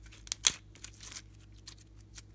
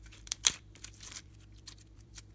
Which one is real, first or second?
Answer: first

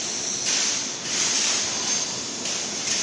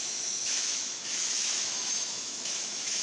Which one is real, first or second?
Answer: first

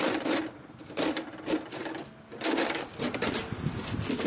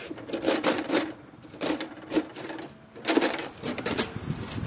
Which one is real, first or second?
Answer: first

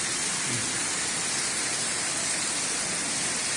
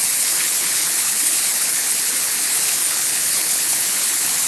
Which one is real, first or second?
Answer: first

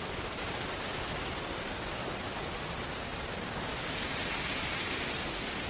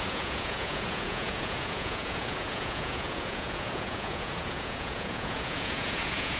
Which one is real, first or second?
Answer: first